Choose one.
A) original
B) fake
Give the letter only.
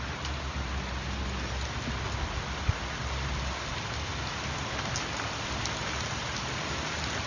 A